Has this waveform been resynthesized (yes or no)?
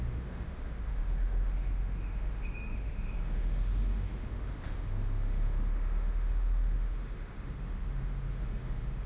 yes